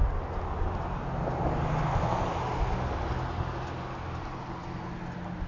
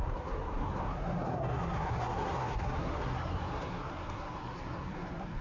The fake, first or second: second